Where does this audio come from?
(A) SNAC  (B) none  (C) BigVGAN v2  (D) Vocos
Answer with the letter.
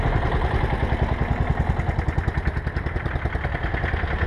B